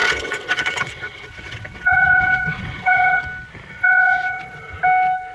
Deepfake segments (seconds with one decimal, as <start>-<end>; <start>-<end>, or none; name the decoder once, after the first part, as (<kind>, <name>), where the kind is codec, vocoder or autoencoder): 0.0-3.2 (vocoder, WaveNeXt); 3.7-4.8